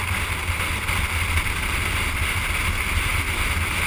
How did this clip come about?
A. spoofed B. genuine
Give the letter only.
B